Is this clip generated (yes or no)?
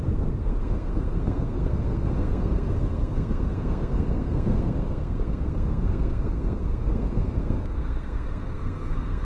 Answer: yes